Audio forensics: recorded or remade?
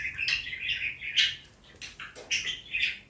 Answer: recorded